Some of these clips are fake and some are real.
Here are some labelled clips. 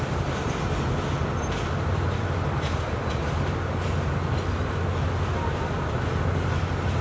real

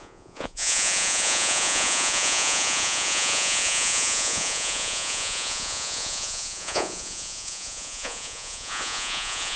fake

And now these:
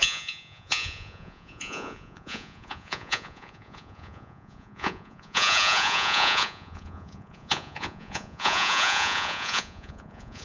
fake